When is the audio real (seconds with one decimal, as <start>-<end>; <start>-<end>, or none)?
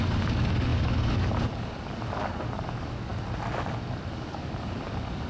3.1-4.1